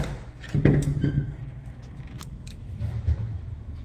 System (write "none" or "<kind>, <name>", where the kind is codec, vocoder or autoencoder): autoencoder, DAC-VAE